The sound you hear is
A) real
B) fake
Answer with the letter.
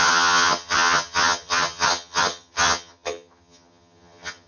B